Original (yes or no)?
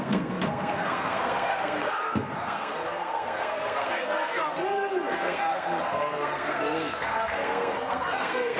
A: no